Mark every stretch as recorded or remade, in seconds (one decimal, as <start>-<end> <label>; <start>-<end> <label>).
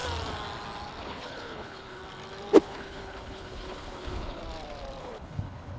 0.0-1.0 recorded; 1.0-2.0 remade; 2.0-2.6 recorded; 2.6-4.4 remade; 4.4-5.0 recorded; 5.0-5.8 remade